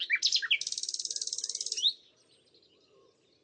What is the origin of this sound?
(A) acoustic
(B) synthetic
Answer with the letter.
A